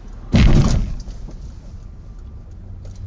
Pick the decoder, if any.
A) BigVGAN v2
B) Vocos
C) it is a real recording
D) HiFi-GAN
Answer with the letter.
C